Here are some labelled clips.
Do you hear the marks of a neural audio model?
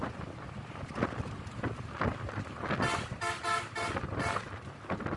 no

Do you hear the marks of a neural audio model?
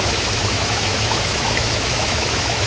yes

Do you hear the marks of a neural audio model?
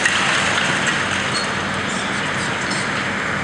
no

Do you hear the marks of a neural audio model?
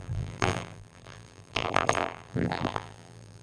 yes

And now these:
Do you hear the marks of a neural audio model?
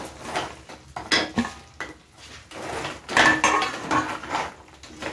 no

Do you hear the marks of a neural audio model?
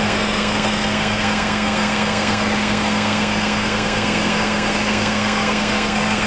yes